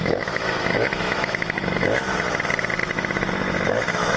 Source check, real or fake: fake